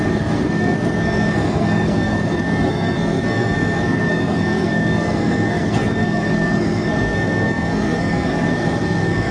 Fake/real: fake